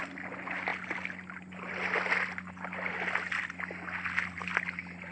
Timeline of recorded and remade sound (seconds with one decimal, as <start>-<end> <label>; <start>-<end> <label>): 0.0-5.1 recorded